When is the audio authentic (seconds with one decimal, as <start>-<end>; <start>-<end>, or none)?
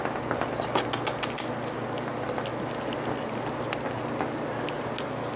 0.0-5.4